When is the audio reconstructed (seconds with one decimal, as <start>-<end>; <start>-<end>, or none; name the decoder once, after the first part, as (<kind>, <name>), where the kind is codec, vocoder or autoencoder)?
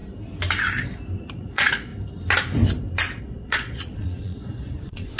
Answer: 1.3-1.9 (vocoder, Vocos); 3.2-5.2